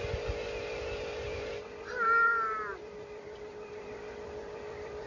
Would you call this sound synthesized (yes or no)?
no